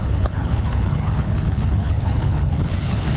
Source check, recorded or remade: remade